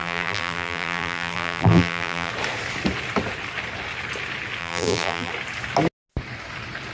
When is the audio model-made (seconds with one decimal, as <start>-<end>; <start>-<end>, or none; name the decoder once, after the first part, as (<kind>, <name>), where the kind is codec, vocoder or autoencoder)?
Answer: 0.0-2.3 (vocoder, BigVGAN v2); 4.6-5.3